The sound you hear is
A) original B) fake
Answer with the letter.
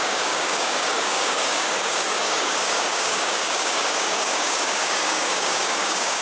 B